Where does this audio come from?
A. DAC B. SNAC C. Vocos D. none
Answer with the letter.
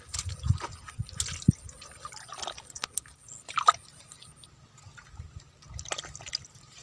D